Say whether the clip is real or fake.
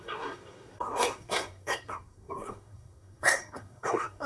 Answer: fake